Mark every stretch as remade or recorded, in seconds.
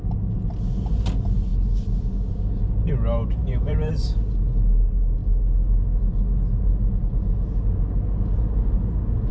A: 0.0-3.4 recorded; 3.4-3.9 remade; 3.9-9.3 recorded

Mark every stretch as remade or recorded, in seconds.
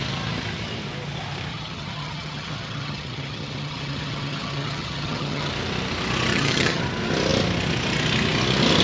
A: 0.0-1.5 recorded; 1.5-5.5 remade; 5.5-6.3 recorded; 6.3-6.8 remade; 6.8-8.8 recorded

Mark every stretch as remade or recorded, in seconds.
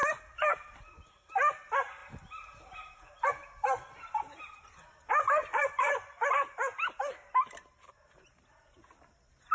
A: 0.0-5.4 recorded; 5.4-6.3 remade; 6.3-9.5 recorded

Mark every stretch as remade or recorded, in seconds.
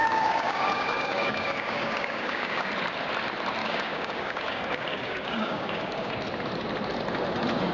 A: 0.0-2.7 remade; 2.7-3.6 recorded; 3.6-6.1 remade; 6.1-7.7 recorded